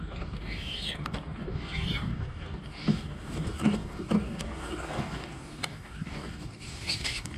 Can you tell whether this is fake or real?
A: fake